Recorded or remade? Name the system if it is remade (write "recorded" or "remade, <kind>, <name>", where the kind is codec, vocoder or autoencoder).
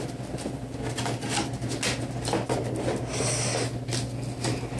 recorded